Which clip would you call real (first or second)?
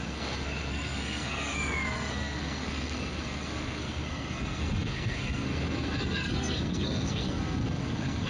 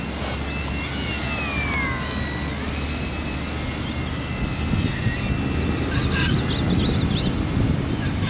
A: second